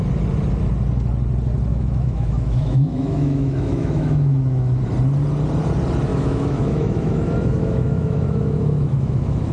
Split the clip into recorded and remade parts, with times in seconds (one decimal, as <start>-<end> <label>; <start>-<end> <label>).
0.0-1.7 recorded; 1.7-4.8 remade; 4.8-6.1 recorded; 6.1-9.5 remade